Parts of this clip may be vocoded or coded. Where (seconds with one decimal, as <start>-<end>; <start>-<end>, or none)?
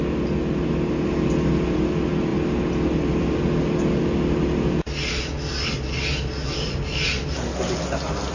none